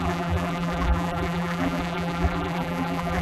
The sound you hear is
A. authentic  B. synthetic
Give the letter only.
B